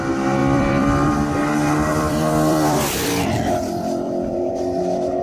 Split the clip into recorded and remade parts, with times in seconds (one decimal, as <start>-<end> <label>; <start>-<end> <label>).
0.0-0.4 recorded; 0.4-1.1 remade; 1.1-1.9 recorded; 1.9-4.5 remade; 4.5-5.2 recorded